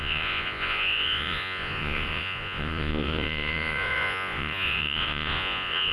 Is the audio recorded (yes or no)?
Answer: no